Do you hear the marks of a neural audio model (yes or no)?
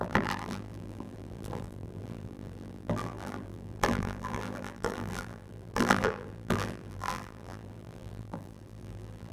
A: yes